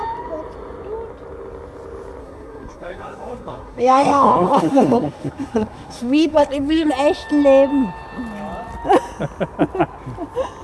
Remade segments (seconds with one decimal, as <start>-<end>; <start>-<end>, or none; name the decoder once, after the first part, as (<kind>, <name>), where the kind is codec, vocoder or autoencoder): 2.2-6.9 (codec, SNAC)